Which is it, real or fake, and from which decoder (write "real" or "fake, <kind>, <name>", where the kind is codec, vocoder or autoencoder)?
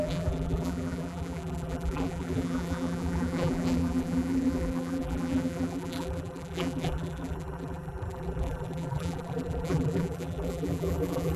fake, vocoder, BigVGAN v2